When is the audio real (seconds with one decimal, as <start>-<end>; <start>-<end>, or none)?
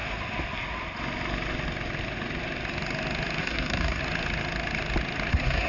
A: 0.0-3.4; 4.0-5.3